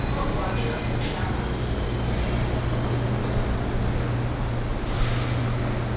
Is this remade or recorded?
recorded